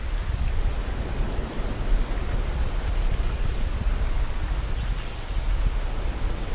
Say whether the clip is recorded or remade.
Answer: recorded